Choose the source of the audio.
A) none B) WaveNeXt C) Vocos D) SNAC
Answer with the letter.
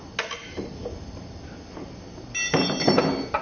A